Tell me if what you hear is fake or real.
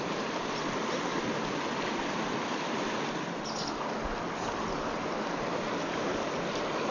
real